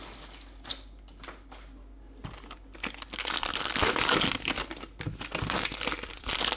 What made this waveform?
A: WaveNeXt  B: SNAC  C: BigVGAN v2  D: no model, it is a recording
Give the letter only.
D